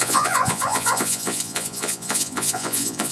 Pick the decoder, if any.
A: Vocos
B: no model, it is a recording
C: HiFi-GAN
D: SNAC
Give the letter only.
A